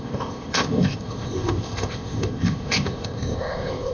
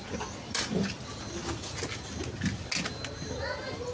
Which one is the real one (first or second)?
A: second